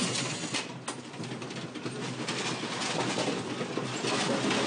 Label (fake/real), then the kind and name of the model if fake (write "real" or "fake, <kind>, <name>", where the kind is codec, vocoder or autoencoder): real